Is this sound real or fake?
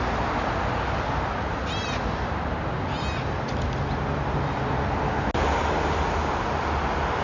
real